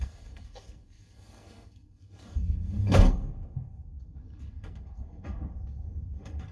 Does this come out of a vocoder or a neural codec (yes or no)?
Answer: yes